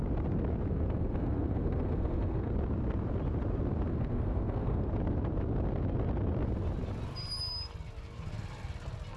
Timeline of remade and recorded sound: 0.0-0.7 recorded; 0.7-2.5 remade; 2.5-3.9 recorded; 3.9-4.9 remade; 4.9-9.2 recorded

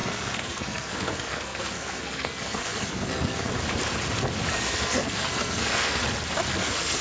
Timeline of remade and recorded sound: 0.0-3.5 remade; 3.5-4.5 recorded; 4.5-6.0 remade; 6.0-6.6 recorded; 6.6-7.0 remade

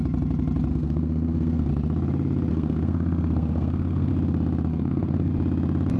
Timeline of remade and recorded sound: 0.0-0.7 recorded; 0.7-1.7 remade; 1.7-2.5 recorded; 2.5-4.1 remade; 4.1-4.7 recorded; 4.7-5.3 remade; 5.3-6.0 recorded